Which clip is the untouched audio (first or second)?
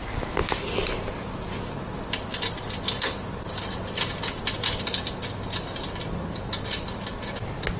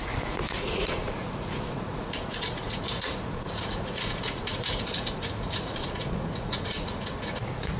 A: first